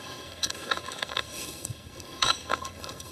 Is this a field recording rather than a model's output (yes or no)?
no